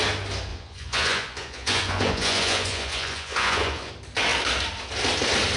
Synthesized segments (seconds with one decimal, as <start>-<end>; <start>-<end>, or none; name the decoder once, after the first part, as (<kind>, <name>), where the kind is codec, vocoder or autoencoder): 0.5-3.9 (vocoder, Vocos)